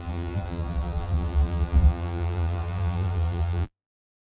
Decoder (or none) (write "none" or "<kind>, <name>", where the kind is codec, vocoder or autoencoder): vocoder, BigVGAN v2